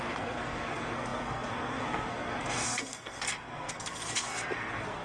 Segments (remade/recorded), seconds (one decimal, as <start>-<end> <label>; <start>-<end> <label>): 0.0-5.0 remade